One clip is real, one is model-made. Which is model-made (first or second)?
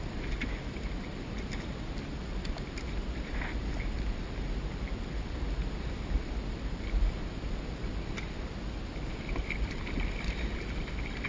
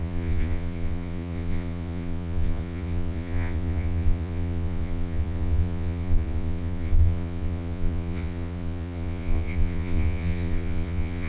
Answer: second